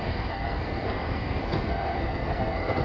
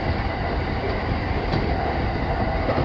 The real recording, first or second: second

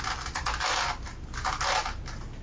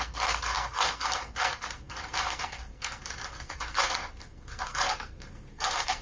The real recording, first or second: first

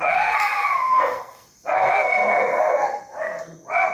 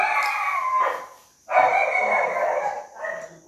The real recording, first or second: second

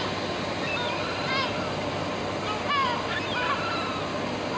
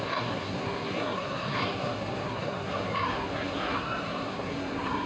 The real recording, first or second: first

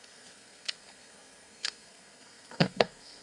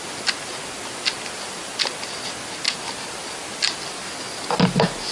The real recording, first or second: second